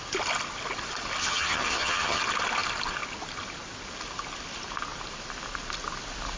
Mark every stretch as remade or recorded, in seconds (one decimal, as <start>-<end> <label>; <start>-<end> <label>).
0.0-1.2 recorded; 1.2-2.2 remade; 2.2-6.4 recorded